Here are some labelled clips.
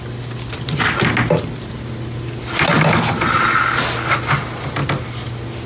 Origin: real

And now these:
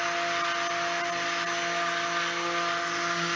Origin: real